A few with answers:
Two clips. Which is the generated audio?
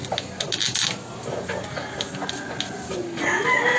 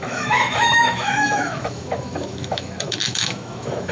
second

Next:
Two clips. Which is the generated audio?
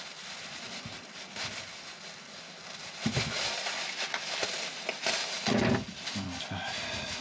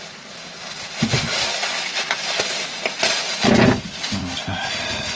second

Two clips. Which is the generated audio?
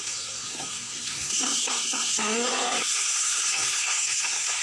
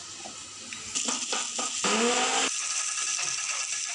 first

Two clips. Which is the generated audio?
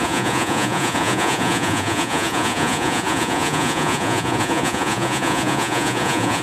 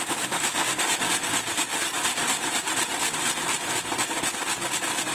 first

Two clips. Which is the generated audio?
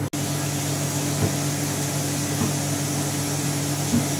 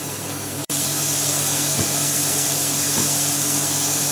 second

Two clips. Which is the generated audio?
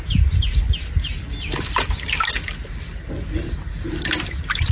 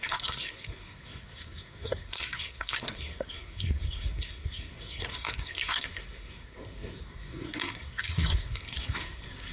second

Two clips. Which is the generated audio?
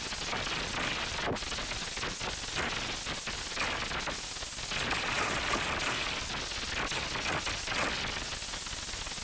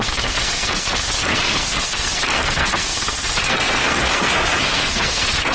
second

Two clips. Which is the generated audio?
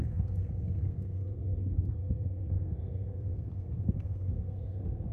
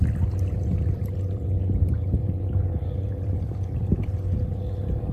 first